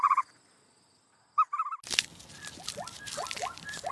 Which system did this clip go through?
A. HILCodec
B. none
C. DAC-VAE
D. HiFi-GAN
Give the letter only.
B